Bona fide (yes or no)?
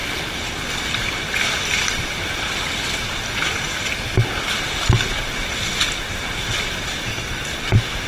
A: yes